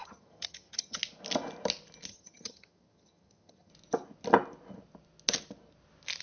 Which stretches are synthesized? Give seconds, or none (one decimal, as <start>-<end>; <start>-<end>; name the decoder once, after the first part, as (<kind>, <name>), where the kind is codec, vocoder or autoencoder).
0.0-1.0 (vocoder, HiFi-GAN); 2.1-3.7